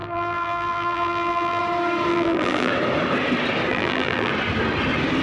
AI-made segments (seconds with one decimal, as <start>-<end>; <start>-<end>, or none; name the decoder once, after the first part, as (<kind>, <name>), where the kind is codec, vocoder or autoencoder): 0.0-1.6 (vocoder, BigVGAN v2); 2.1-2.7; 3.7-4.3